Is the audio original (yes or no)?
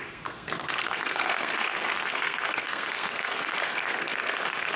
no